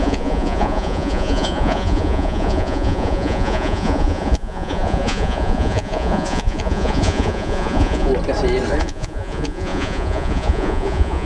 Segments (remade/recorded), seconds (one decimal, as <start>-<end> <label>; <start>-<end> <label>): 0.0-8.1 remade; 8.1-8.8 recorded; 8.8-11.3 remade